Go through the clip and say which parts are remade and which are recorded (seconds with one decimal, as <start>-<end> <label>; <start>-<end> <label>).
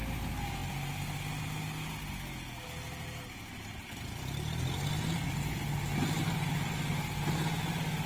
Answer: 0.0-8.1 recorded